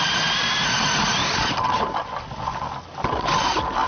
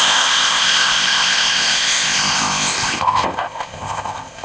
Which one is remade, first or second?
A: second